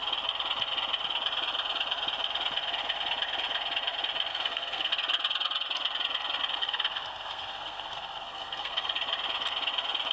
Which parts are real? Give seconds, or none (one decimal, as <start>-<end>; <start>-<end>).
0.0-4.3; 4.9-6.6; 8.9-10.1